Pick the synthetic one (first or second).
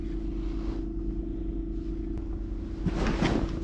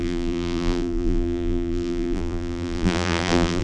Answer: second